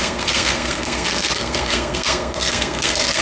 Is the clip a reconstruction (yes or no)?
yes